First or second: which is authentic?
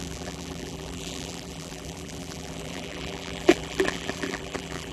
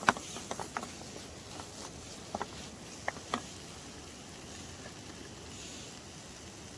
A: second